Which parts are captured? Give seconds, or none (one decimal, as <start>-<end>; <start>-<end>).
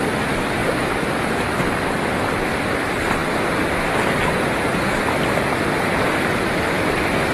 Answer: 0.0-7.3